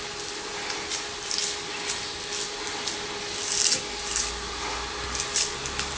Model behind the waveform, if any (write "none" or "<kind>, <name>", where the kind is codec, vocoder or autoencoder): none